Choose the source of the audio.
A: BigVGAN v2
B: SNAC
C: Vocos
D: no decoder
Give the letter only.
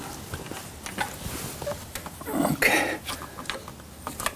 D